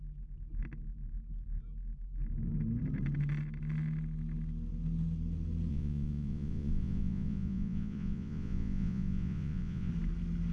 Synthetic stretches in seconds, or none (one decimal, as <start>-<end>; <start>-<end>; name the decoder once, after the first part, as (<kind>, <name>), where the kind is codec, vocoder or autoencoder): 5.7-9.9 (vocoder, Vocos)